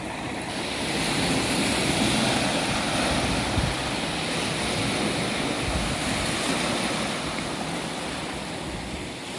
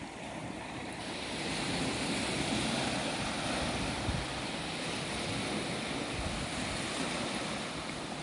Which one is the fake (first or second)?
second